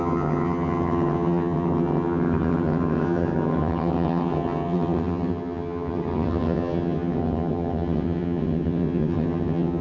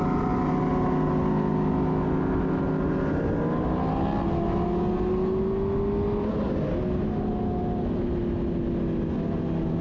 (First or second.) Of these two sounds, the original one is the second